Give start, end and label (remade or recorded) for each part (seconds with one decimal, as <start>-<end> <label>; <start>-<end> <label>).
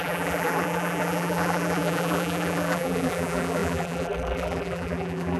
0.0-5.4 remade